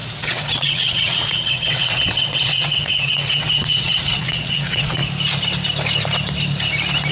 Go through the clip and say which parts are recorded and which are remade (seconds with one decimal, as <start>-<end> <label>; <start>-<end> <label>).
0.0-5.0 remade; 5.0-7.1 recorded